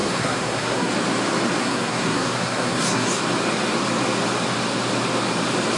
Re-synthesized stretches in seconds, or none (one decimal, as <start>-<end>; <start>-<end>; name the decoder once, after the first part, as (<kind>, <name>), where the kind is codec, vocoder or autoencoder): 0.0-0.9 (codec, SNAC); 1.6-3.2